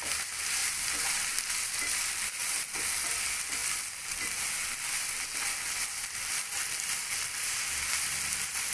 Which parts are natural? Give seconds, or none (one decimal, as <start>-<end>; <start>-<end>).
0.0-8.7